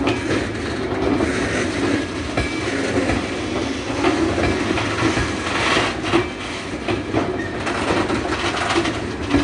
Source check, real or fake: real